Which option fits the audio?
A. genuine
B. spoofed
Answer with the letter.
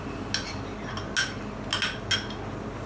A